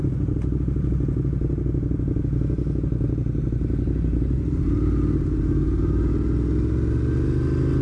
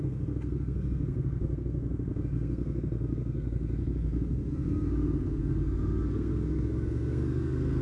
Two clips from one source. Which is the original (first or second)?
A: first